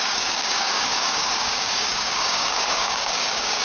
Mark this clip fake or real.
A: fake